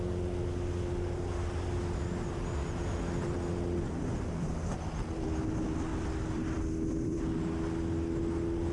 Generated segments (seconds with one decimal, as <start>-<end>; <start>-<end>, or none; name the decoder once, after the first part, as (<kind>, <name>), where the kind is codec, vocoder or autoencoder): 5.9-7.2 (vocoder, BigVGAN v2)